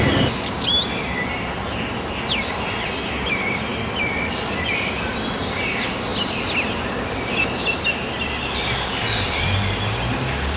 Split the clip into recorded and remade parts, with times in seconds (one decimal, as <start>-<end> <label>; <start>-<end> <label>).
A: 0.0-10.6 recorded